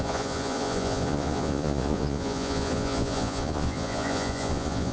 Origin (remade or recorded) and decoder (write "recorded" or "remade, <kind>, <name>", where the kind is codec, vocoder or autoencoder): remade, vocoder, Vocos